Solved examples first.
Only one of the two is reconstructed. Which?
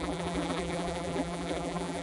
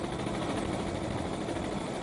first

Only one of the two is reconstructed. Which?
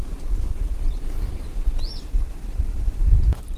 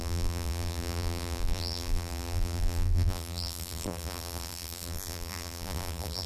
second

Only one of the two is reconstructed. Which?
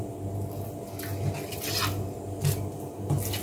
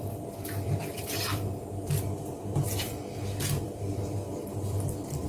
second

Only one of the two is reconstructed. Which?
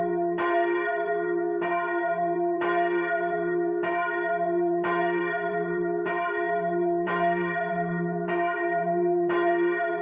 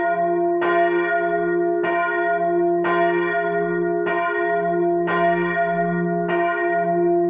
first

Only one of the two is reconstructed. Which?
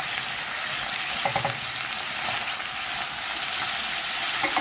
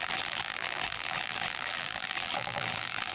second